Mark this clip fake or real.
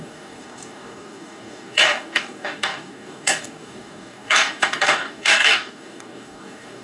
fake